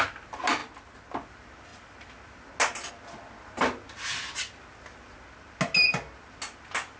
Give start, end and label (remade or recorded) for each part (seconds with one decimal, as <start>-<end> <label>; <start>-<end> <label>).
0.0-7.0 recorded